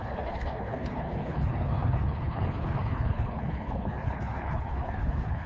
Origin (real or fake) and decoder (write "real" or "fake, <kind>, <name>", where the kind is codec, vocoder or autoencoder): fake, codec, HILCodec